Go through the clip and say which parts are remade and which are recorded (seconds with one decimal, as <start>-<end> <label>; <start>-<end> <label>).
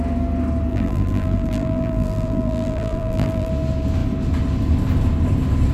0.0-0.7 recorded; 0.7-3.5 remade; 3.5-5.7 recorded